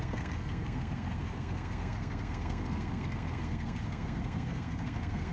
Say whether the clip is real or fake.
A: fake